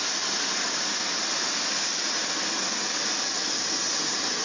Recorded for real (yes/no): yes